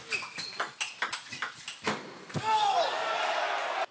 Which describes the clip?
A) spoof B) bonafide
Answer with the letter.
B